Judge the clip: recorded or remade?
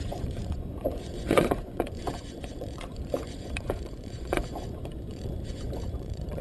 remade